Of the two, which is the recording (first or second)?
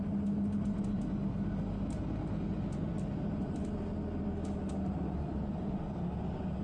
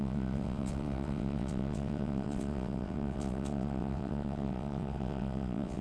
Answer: first